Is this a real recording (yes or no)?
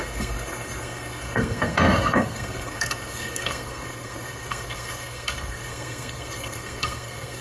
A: no